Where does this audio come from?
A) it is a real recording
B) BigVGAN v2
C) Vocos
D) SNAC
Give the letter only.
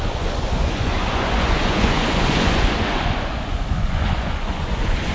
C